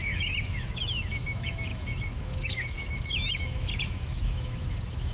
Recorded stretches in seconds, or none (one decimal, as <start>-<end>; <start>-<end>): none